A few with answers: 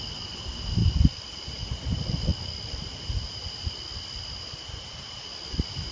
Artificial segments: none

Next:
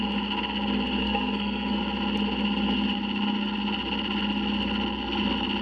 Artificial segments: 1.0-1.8 (codec, SNAC)

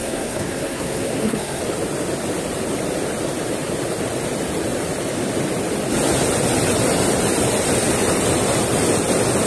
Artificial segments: 0.0-1.6 (codec, SNAC)

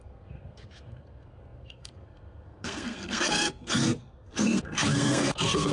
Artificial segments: 0.0-5.7 (codec, SNAC)

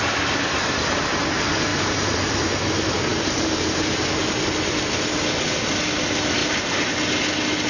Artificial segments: 1.7-2.4 (vocoder, BigVGAN v2); 3.1-3.9; 6.4-6.9

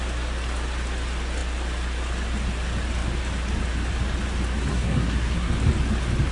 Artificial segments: 4.7-5.5 (codec, SNAC)